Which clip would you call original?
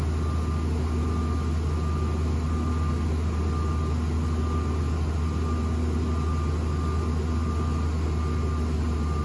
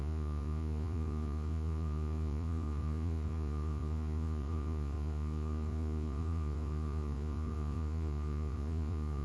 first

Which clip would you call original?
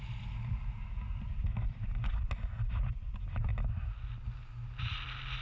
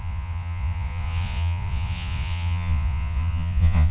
first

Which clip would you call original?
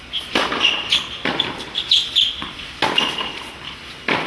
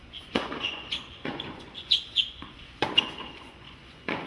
first